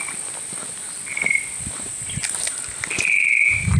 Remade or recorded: recorded